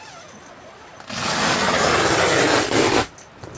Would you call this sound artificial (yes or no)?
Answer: no